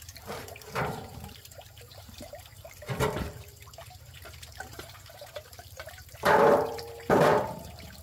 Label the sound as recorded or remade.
remade